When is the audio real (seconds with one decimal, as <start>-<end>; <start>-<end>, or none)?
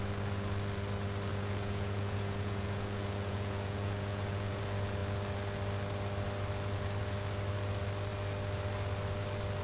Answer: 0.0-1.3; 4.6-9.6